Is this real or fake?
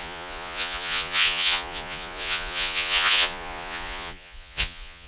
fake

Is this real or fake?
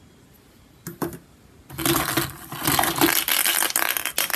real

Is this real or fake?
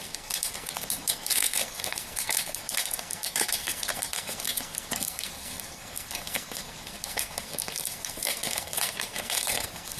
fake